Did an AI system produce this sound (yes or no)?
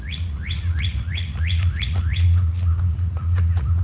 yes